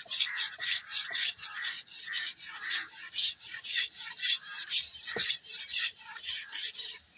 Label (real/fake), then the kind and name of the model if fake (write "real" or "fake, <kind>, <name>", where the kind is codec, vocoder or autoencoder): fake, vocoder, BigVGAN v2